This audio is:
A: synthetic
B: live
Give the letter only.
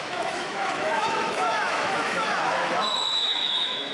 A